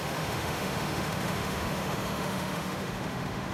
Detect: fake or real fake